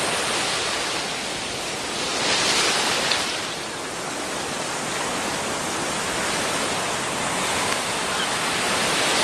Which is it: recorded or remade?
recorded